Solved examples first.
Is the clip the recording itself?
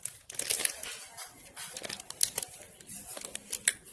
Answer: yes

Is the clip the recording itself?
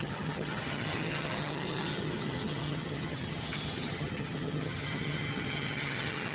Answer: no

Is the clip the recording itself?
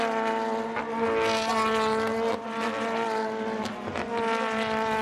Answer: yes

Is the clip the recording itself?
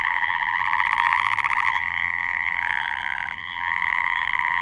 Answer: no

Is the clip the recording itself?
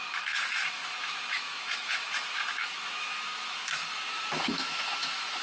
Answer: no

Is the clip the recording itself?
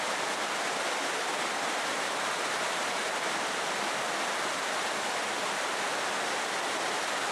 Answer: yes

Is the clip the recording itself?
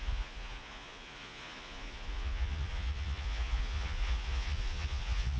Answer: no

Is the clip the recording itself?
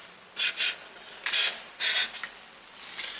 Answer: yes